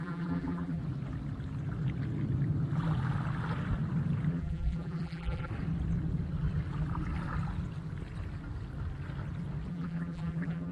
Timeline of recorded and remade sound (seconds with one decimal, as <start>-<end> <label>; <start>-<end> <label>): 0.0-0.8 remade; 0.8-4.3 recorded; 4.3-5.5 remade; 5.5-9.7 recorded; 9.7-10.7 remade